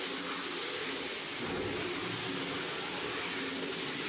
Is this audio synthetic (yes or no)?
no